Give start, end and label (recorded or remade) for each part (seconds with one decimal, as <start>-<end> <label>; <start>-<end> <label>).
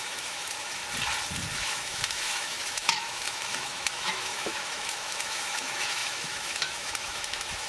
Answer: 0.0-0.8 remade; 0.8-1.7 recorded; 1.7-7.7 remade